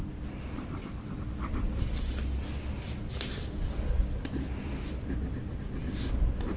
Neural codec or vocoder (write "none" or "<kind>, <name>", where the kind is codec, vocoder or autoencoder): none